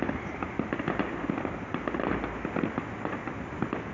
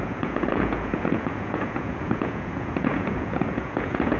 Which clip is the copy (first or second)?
second